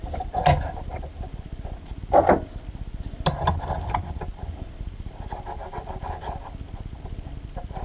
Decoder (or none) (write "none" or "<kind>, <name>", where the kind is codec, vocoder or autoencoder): none